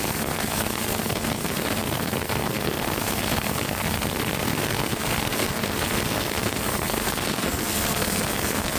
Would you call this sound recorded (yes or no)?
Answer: no